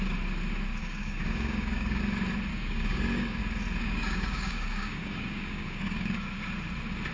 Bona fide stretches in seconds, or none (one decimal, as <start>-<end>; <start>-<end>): 0.0-0.8; 2.0-2.5; 3.4-3.8; 6.2-7.1